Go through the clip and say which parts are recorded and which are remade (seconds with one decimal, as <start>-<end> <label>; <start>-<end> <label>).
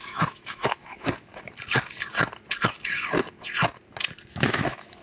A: 0.0-1.3 remade; 1.3-4.3 recorded; 4.3-5.0 remade